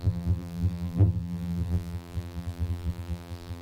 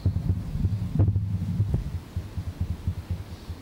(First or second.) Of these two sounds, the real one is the second